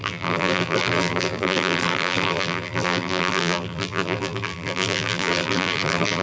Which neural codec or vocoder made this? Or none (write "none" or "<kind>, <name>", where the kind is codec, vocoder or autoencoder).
vocoder, BigVGAN v2